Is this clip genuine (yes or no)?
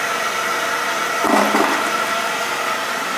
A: no